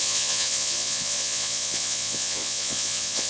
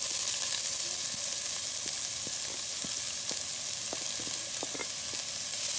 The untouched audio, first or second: second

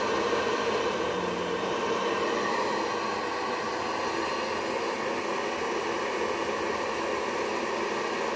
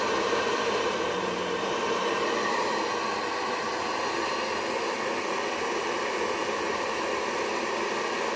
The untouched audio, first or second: first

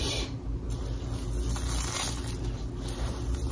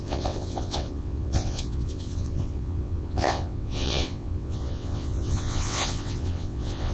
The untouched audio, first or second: first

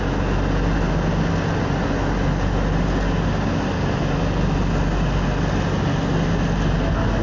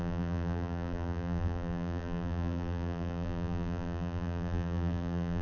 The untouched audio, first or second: first